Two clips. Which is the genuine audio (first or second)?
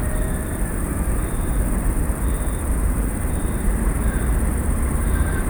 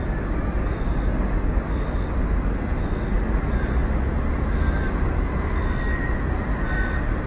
second